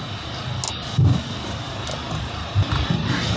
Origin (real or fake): real